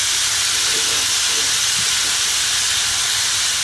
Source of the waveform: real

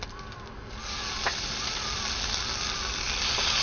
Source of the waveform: real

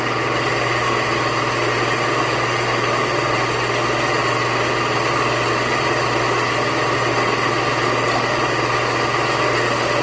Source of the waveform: real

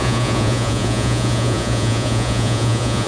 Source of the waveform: fake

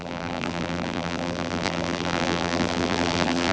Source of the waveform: fake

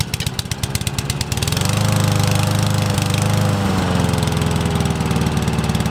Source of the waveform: real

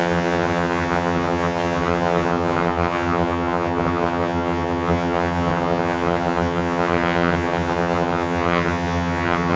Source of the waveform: fake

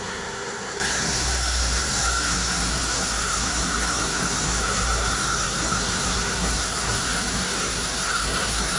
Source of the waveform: fake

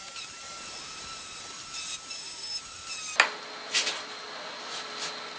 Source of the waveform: real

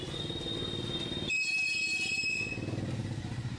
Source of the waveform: real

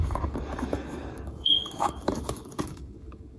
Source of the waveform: fake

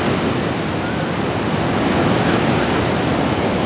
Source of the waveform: real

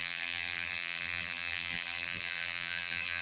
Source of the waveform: fake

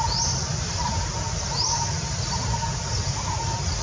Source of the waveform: real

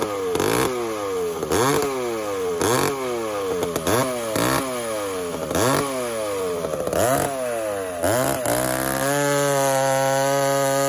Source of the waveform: real